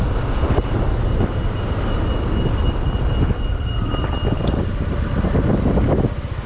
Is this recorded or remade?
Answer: recorded